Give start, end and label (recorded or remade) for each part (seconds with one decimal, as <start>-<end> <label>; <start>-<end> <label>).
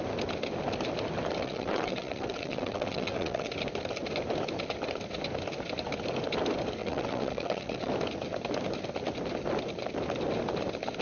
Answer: 0.0-1.4 recorded; 1.4-3.5 remade; 3.5-6.8 recorded; 6.8-7.9 remade; 7.9-11.0 recorded